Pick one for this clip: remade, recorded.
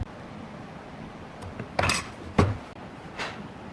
recorded